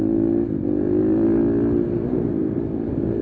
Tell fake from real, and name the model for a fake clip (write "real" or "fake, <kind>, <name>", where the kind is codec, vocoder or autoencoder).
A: real